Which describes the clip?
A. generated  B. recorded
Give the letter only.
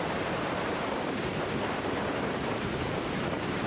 A